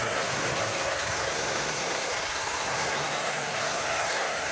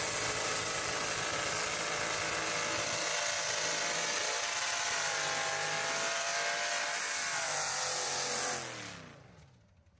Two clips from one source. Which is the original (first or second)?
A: second